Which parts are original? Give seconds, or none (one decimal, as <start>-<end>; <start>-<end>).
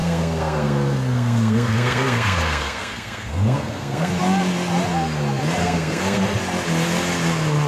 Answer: 4.1-5.6; 6.2-7.7